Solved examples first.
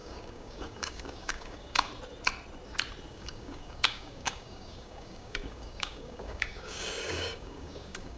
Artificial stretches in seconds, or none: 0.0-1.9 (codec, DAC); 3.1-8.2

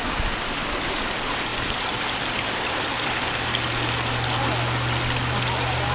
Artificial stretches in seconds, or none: 1.5-2.0 (vocoder, BigVGAN v2)

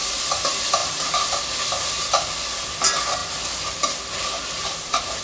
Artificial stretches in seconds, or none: 0.8-1.4 (vocoder, BigVGAN v2)

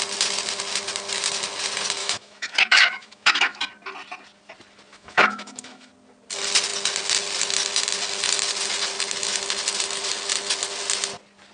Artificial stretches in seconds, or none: 2.0-3.6 (autoencoder, DAC-VAE); 4.9-5.9

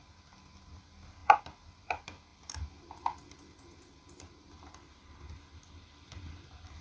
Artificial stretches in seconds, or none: none